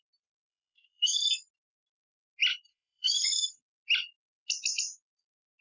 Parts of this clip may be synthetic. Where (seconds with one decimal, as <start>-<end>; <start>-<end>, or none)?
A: 0.5-1.3; 2.7-3.6